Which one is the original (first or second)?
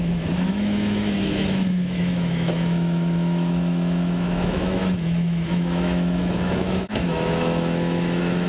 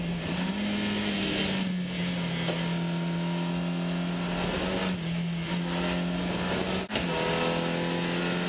second